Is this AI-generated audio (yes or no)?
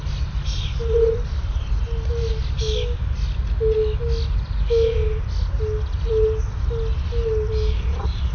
no